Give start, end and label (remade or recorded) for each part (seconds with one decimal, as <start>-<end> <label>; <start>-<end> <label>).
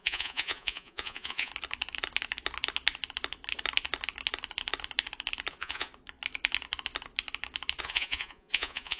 0.0-1.5 remade; 1.5-5.5 recorded; 5.5-5.9 remade; 5.9-7.8 recorded; 7.8-9.0 remade